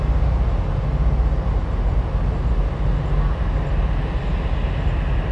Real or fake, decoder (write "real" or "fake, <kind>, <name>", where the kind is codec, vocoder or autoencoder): real